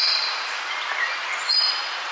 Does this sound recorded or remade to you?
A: recorded